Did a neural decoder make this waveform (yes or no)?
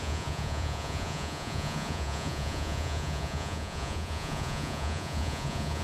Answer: yes